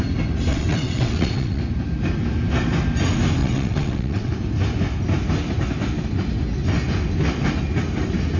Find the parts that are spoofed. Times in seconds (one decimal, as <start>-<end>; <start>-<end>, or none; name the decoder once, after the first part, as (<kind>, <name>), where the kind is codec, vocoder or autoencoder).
0.5-1.6 (vocoder, WaveNeXt); 3.4-4.3